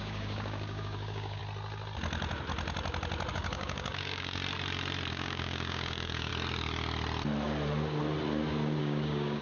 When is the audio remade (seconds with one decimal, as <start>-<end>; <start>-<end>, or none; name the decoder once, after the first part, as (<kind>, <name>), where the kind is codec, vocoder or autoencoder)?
0.0-1.4 (codec, DAC); 3.3-4.4; 5.1-6.3; 8.8-9.4